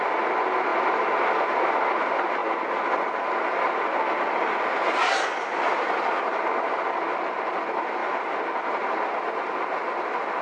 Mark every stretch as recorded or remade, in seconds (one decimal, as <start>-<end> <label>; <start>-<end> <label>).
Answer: 0.0-10.4 recorded